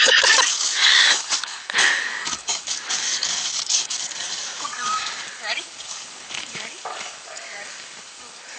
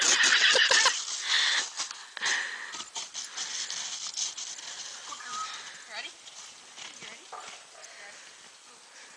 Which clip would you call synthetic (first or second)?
first